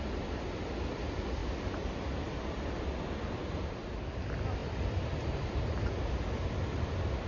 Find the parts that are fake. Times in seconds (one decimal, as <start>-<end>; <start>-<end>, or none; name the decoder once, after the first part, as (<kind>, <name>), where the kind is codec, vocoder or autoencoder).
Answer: none